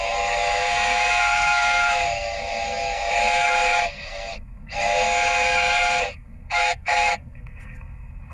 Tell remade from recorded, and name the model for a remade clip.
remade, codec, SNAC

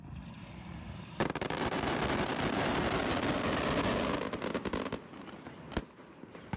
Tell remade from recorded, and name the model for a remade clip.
recorded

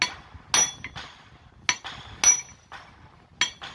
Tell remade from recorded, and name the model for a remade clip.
recorded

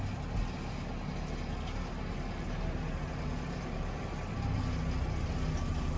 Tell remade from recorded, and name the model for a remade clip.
recorded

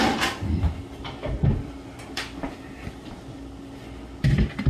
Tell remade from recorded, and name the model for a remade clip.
recorded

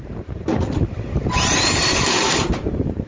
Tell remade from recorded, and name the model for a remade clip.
remade, vocoder, BigVGAN v2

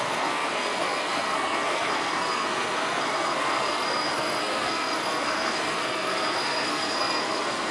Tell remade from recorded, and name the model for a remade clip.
remade, codec, SNAC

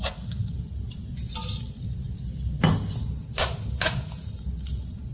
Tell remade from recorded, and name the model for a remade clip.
recorded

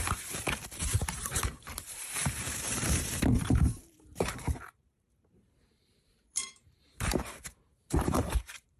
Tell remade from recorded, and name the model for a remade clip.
remade, vocoder, BigVGAN v2